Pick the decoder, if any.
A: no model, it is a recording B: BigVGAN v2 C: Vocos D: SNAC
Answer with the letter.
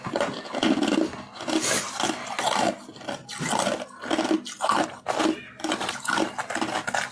A